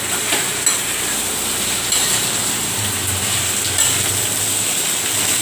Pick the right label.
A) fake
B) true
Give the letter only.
B